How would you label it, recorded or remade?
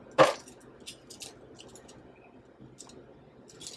recorded